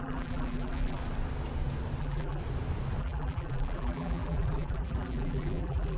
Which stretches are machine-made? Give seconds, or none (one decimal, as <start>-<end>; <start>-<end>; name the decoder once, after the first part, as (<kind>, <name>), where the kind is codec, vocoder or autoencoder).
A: 0.0-1.0 (vocoder, BigVGAN v2); 2.0-2.4; 3.0-6.0